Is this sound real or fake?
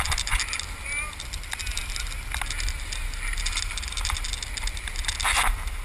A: real